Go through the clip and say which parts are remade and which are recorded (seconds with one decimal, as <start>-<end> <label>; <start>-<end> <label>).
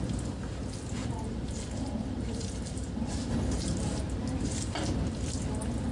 0.0-1.0 recorded; 1.0-4.0 remade; 4.0-5.9 recorded